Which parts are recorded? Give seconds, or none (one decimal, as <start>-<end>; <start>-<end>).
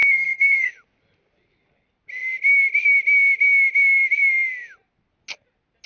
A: 0.7-5.9